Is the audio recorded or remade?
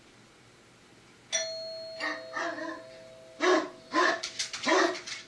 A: recorded